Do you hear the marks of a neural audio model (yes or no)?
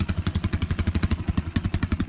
yes